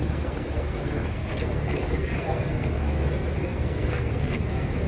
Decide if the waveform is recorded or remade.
remade